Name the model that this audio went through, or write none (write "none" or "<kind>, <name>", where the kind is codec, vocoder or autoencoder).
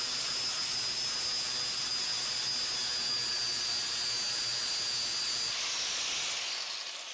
none